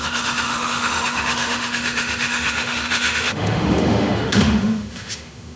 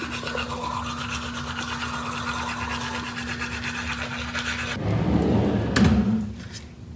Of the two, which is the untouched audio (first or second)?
second